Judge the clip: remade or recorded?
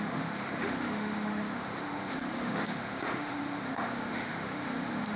remade